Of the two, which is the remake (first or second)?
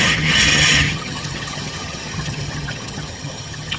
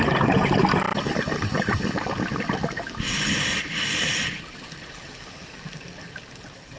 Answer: first